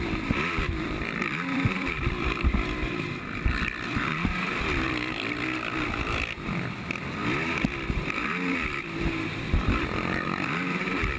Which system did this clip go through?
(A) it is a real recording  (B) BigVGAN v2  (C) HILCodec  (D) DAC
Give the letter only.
B